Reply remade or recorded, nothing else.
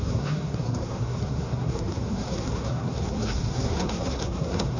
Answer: remade